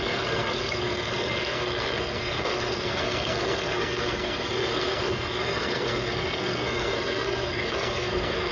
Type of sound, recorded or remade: remade